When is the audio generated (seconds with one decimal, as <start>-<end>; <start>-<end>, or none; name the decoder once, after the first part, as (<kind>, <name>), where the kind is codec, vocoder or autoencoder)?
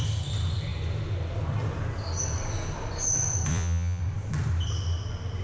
3.5-4.0 (vocoder, Vocos)